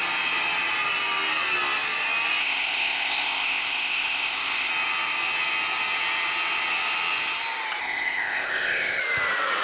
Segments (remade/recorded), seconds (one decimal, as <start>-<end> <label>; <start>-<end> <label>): 0.0-2.4 recorded; 2.4-4.7 remade; 4.7-7.8 recorded; 7.8-9.0 remade; 9.0-9.6 recorded